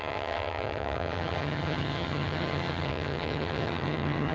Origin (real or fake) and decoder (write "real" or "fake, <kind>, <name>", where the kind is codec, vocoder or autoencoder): fake, vocoder, HiFi-GAN